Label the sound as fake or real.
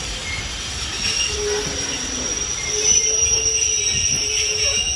real